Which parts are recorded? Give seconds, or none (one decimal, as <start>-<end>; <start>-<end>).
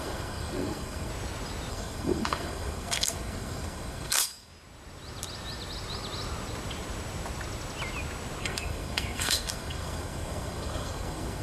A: 1.1-1.7; 4.5-8.4